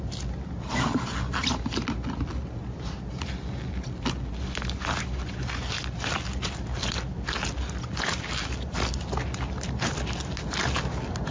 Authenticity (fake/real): real